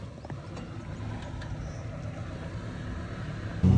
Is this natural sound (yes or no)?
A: yes